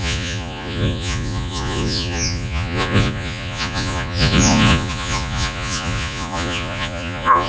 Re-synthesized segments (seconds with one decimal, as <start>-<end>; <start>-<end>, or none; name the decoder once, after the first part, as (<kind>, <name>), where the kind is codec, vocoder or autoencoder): 0.0-7.5 (vocoder, Vocos)